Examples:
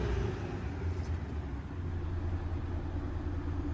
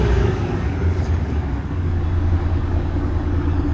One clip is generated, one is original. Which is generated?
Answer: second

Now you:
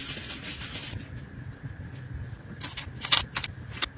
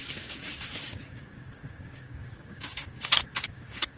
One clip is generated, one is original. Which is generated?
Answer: second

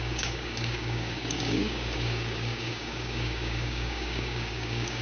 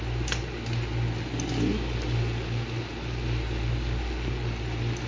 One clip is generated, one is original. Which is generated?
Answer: first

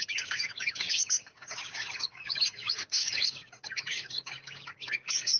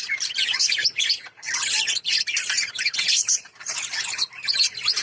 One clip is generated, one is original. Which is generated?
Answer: first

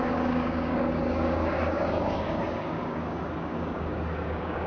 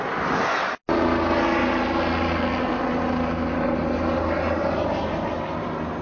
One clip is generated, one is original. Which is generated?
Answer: first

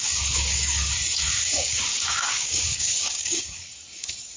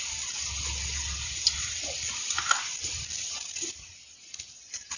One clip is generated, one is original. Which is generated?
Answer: first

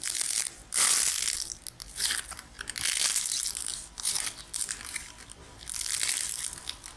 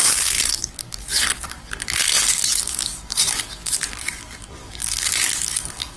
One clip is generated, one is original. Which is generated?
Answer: second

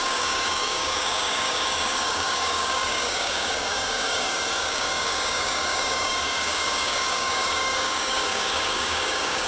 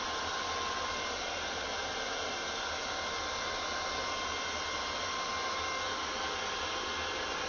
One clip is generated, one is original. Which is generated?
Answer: first